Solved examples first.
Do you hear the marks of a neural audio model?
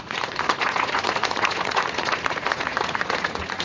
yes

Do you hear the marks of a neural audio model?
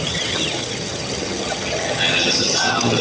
yes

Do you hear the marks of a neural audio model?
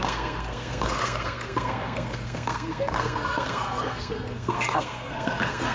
yes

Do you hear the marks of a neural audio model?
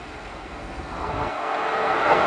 yes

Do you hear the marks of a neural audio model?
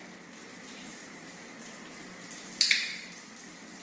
no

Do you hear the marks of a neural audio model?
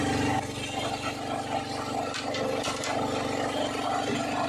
no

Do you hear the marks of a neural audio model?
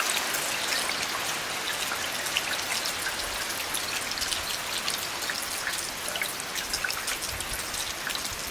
no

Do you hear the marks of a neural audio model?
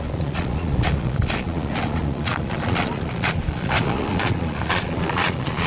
yes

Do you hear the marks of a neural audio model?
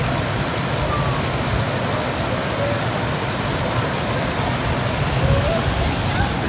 no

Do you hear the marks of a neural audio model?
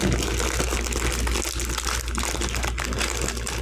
no